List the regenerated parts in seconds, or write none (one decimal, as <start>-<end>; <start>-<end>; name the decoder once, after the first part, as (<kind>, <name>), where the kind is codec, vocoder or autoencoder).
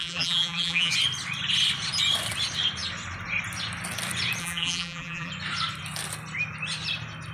0.0-0.9 (vocoder, BigVGAN v2); 4.4-5.3